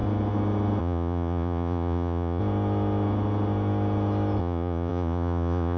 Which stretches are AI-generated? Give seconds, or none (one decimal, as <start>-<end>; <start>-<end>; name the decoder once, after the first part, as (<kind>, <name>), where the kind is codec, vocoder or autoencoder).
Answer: 0.8-2.4 (vocoder, Vocos); 4.4-5.8